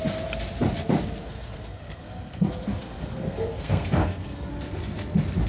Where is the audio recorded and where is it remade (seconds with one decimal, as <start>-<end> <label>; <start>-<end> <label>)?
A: 0.0-1.2 recorded; 1.2-4.5 remade; 4.5-5.5 recorded